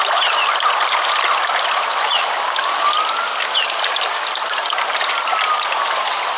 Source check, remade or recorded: recorded